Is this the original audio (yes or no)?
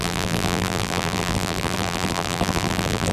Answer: no